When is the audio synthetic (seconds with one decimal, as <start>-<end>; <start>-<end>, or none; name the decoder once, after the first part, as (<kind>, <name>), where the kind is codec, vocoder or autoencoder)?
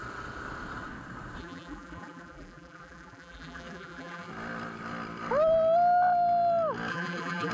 1.4-4.3 (vocoder, BigVGAN v2); 6.9-7.5